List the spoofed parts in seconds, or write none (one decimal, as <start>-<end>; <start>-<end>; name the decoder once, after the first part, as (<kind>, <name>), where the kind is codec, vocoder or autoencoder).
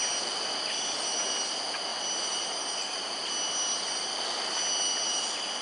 none